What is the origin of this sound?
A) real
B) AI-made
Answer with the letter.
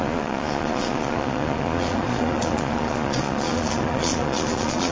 B